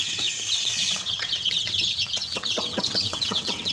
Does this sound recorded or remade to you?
remade